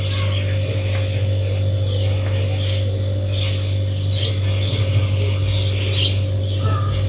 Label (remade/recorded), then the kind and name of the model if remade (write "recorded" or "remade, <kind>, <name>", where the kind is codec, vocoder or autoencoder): recorded